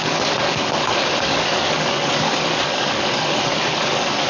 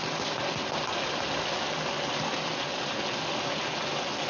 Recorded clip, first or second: second